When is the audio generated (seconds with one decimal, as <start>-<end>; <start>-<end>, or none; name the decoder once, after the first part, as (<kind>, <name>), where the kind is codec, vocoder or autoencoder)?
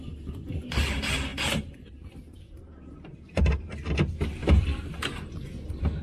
1.3-3.4 (vocoder, BigVGAN v2); 4.4-5.3